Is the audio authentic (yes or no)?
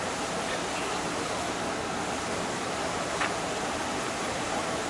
yes